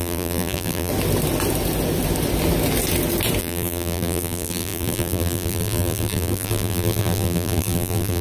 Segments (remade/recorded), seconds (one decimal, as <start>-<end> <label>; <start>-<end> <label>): 0.0-0.9 remade; 0.9-3.4 recorded; 3.4-8.2 remade